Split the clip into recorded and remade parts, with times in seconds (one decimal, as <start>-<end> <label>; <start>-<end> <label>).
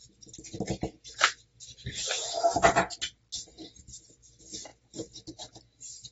0.0-1.5 recorded; 1.5-2.3 remade; 2.3-4.7 recorded; 4.7-5.5 remade; 5.5-6.1 recorded